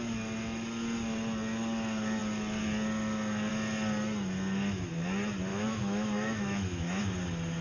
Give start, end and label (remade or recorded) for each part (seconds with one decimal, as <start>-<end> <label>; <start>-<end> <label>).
0.0-5.5 recorded; 5.5-7.0 remade; 7.0-7.6 recorded